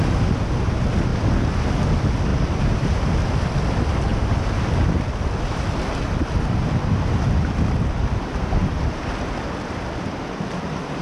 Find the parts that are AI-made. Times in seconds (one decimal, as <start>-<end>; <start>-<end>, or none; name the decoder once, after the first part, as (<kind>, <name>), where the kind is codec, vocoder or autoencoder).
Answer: 2.3-3.1 (vocoder, BigVGAN v2); 8.6-9.9